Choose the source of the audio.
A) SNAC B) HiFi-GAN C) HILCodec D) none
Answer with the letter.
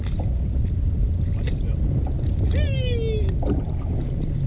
D